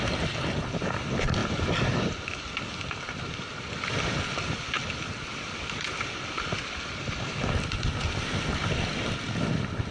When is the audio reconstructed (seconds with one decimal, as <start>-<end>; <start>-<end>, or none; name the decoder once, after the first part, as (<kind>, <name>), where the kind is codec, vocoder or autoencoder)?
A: none